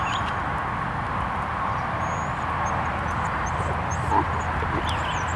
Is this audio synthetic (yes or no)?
no